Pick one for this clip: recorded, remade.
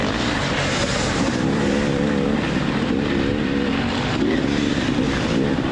remade